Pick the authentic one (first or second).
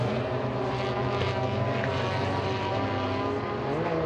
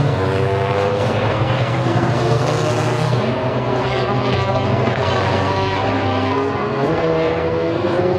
first